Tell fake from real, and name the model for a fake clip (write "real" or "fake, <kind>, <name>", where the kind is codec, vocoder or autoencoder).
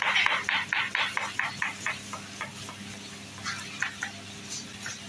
real